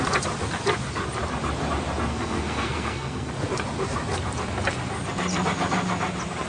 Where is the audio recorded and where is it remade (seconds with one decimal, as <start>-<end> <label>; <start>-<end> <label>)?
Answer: 0.0-2.1 recorded; 2.1-3.3 remade; 3.3-6.5 recorded